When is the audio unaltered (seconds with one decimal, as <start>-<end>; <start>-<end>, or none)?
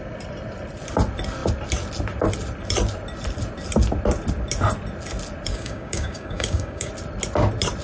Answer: 0.0-5.5; 6.9-7.8